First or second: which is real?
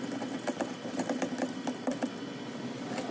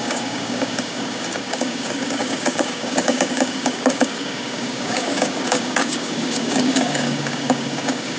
first